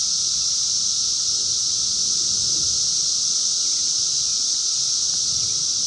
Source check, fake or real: real